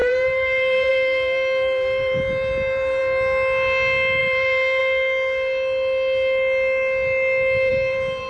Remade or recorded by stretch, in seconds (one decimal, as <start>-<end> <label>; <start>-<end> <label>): 0.0-3.0 remade; 3.0-4.2 recorded; 4.2-4.8 remade; 4.8-7.7 recorded; 7.7-8.3 remade